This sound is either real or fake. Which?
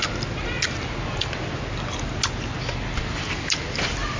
real